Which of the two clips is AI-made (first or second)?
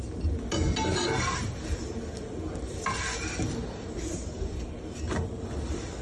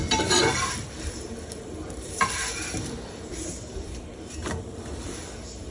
second